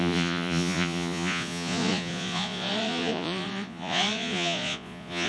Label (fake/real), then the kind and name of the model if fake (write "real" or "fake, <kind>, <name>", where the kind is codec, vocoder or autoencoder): fake, vocoder, Vocos